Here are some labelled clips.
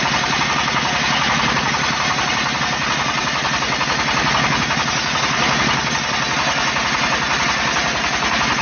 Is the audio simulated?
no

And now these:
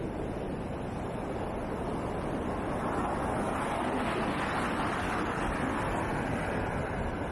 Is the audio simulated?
no